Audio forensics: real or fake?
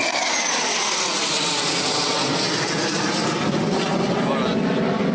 real